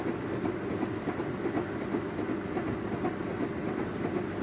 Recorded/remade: recorded